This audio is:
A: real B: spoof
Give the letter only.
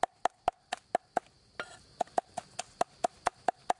A